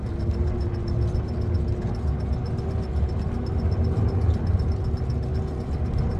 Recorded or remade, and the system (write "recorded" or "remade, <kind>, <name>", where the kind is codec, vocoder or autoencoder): recorded